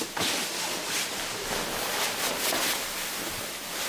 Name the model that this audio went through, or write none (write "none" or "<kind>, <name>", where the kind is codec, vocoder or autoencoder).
none